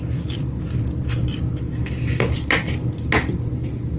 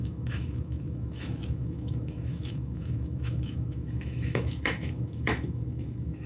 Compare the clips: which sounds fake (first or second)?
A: second